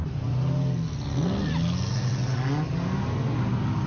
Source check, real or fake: real